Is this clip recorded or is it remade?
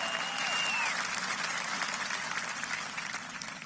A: recorded